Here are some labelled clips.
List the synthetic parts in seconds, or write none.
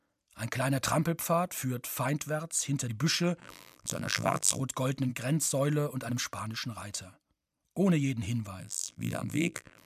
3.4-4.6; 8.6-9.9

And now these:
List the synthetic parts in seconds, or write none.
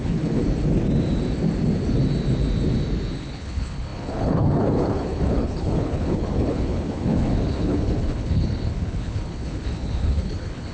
0.0-0.4; 3.2-10.7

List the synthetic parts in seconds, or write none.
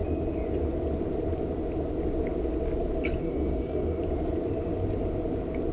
3.2-4.0